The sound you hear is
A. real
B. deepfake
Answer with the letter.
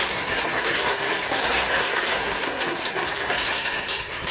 B